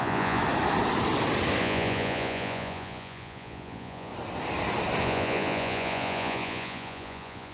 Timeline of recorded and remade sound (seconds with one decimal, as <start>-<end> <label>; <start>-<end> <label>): 0.0-0.4 remade; 0.4-1.6 recorded; 1.6-4.1 remade; 4.1-5.0 recorded; 5.0-7.5 remade